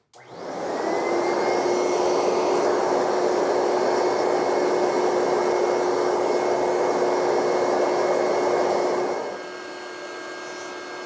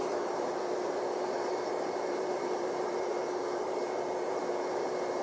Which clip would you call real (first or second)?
first